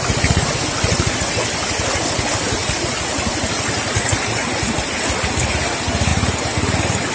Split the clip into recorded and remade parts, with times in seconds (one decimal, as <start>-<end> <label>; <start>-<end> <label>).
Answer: 0.0-7.1 recorded